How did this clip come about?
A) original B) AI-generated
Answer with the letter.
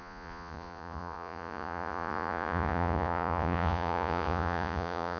B